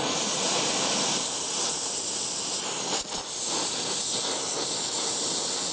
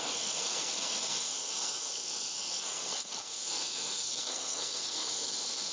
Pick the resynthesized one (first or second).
second